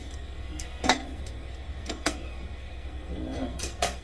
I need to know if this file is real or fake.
fake